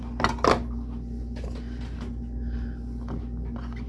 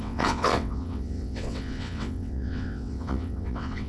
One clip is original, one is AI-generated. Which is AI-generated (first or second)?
second